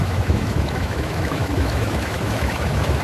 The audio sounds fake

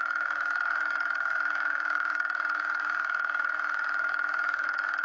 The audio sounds fake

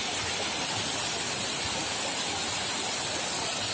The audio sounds real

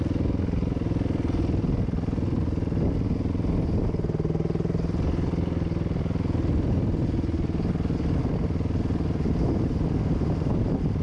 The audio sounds real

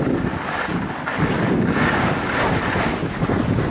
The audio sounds real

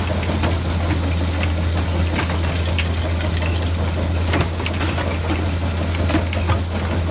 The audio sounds real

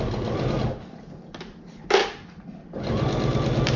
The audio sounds real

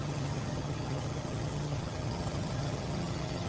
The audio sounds fake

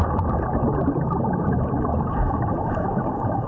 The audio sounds fake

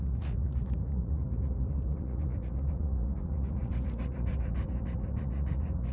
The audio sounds fake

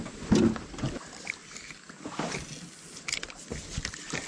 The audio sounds real